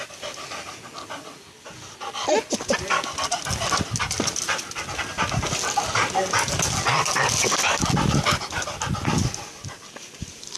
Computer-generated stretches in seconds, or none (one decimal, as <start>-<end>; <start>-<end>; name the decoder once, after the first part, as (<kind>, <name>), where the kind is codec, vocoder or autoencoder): none